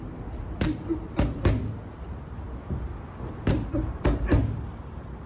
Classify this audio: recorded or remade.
recorded